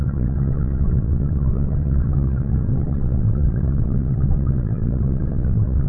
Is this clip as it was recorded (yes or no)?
no